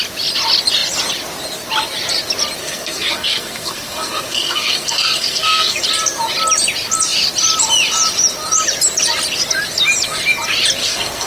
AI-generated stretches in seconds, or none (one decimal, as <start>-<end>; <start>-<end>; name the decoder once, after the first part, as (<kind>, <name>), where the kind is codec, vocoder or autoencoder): 2.6-5.8 (codec, SNAC); 10.8-11.3